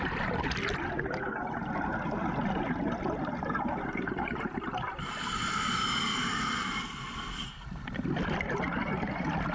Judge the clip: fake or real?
real